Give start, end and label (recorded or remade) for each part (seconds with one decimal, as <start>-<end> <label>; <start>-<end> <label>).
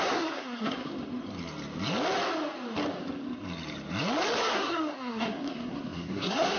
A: 0.0-0.9 remade; 0.9-4.5 recorded; 4.5-6.6 remade